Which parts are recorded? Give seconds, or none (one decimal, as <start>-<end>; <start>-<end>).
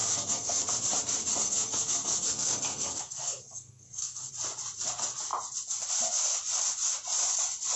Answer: 0.6-1.3; 4.3-7.8